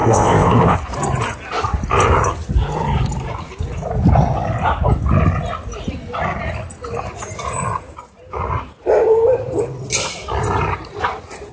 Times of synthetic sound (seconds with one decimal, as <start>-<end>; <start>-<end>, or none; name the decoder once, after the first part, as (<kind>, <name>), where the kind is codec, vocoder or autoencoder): 0.0-0.8 (codec, ZipCodec)